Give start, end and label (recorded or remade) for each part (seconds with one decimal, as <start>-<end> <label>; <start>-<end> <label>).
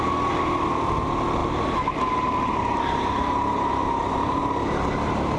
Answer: 0.0-1.4 recorded; 1.4-4.4 remade; 4.4-5.4 recorded